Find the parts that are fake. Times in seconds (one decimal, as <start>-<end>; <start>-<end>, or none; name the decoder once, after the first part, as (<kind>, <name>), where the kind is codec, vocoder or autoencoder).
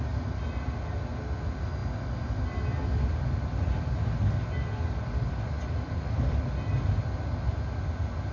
none